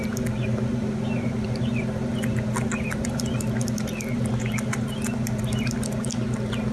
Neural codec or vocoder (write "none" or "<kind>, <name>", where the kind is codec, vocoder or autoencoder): none